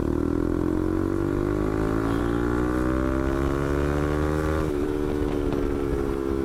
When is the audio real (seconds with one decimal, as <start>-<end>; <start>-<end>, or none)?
0.0-6.4